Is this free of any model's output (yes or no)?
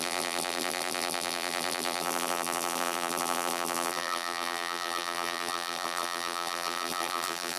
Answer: no